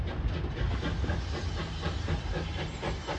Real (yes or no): yes